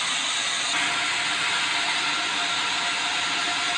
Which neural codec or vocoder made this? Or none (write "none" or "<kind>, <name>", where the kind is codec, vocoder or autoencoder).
none